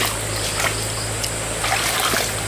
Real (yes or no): yes